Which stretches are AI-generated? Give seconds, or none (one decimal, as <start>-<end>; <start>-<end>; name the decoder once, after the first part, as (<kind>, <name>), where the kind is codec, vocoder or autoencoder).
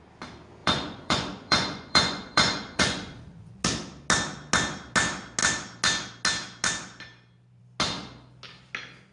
0.6-3.6 (vocoder, Vocos)